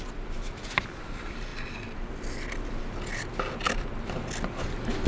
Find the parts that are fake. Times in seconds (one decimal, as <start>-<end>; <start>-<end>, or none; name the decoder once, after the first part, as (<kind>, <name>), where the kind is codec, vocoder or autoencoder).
none